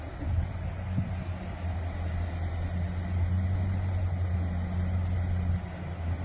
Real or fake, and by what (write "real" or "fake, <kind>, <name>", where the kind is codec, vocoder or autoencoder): real